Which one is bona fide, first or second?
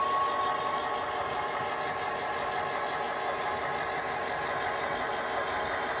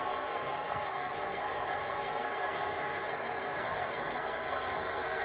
first